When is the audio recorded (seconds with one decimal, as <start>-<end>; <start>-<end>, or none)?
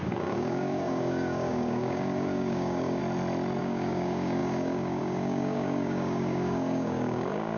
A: 3.0-3.6